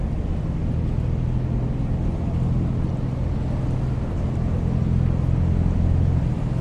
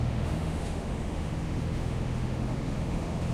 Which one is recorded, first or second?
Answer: first